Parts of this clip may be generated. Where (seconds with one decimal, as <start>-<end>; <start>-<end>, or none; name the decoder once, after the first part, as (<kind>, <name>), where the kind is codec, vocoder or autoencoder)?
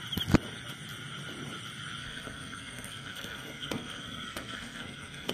2.0-5.3 (codec, SNAC)